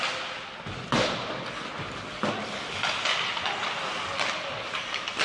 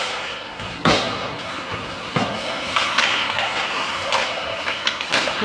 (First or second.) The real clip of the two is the first